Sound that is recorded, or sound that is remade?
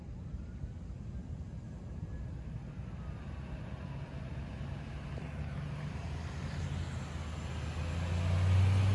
recorded